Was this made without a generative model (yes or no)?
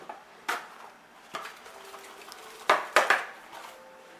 yes